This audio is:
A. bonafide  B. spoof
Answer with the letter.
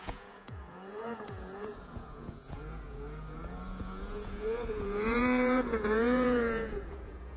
B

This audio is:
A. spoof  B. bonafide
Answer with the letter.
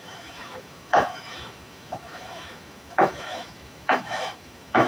A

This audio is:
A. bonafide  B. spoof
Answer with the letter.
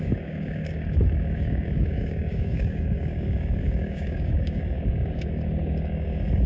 B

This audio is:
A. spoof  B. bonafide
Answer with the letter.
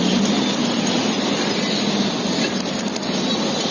B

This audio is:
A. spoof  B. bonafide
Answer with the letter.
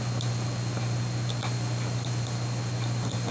B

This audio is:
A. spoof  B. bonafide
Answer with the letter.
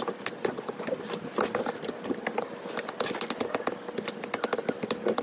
B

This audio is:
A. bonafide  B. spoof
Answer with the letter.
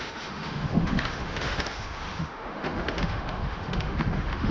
B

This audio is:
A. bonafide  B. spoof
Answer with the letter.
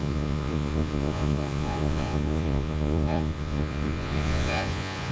B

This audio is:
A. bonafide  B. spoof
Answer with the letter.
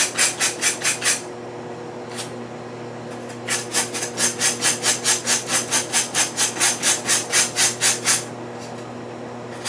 A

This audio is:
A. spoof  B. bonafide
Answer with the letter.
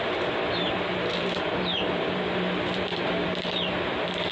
A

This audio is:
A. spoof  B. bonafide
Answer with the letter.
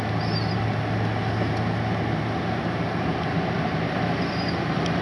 B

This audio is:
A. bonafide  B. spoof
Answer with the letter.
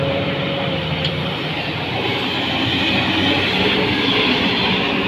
A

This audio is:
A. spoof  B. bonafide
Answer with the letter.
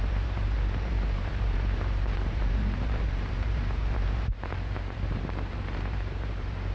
A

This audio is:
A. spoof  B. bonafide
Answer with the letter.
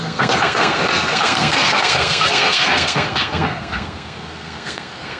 A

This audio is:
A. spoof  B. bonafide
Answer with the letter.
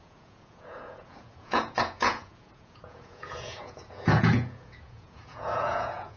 A